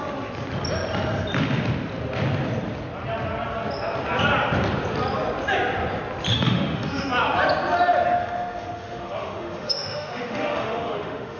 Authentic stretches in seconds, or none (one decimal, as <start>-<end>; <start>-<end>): 0.0-6.3; 7.1-8.2